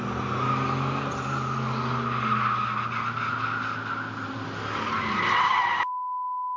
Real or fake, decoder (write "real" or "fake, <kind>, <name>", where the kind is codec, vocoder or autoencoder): real